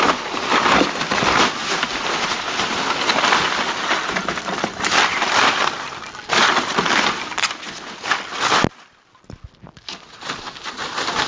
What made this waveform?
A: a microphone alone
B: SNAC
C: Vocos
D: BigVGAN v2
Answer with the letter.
A